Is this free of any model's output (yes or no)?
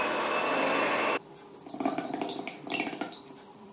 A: no